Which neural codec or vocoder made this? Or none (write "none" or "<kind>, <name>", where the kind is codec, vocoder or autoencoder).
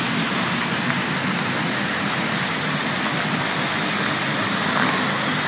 none